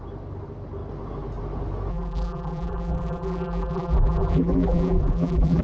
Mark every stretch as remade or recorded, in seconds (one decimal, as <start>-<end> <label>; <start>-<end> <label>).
0.0-1.9 recorded; 1.9-5.6 remade